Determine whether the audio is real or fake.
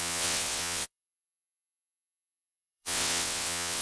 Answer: fake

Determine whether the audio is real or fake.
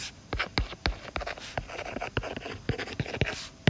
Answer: real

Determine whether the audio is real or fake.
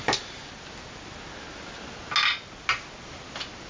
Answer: real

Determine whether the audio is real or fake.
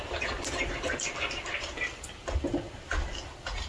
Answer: real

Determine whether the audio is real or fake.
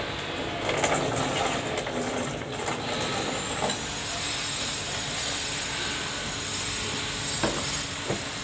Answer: real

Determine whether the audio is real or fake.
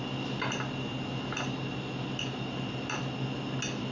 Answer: real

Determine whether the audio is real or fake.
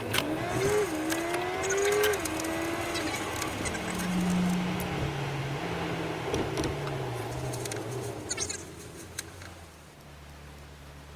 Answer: real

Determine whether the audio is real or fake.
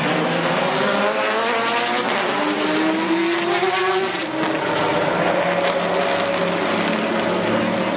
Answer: real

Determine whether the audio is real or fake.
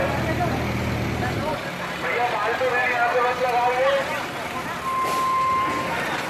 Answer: real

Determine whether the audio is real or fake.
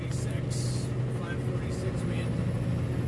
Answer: real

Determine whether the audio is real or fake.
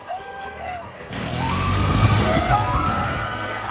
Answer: fake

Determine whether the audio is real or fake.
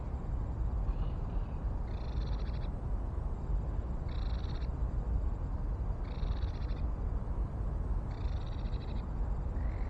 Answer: real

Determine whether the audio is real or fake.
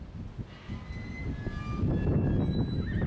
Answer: real